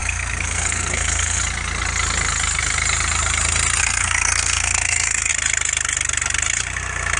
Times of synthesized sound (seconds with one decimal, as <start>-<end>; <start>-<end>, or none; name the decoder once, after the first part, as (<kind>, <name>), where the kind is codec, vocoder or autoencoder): 0.0-1.4 (codec, SNAC); 3.8-5.3